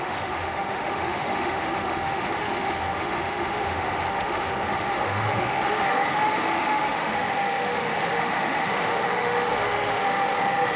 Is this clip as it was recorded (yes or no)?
no